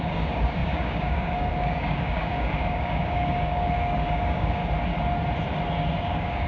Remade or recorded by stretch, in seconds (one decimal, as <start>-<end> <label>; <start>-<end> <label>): 0.0-4.6 remade; 4.6-6.0 recorded; 6.0-6.5 remade